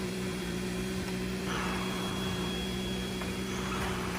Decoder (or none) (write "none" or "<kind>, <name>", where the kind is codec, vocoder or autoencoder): vocoder, BigVGAN v2